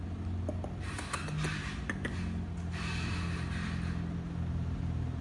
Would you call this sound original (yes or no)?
yes